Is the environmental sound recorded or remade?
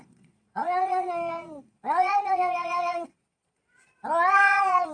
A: remade